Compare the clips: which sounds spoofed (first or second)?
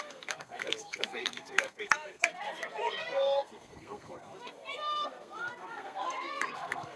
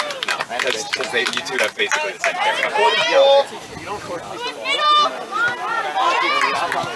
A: first